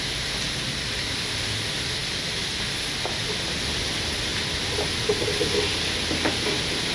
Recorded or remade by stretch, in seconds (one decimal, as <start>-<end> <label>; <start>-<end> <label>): 0.0-6.9 recorded